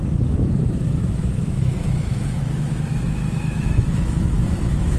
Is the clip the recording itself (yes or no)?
no